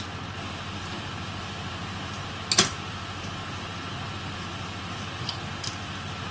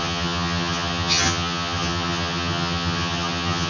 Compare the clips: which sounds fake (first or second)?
second